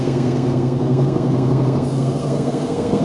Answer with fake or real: fake